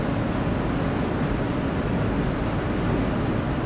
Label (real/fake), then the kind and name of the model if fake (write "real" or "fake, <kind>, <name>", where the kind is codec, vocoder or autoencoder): real